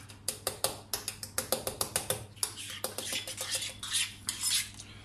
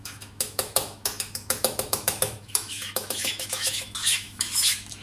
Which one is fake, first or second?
second